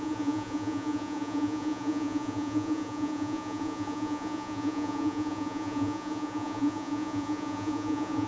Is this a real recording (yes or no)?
no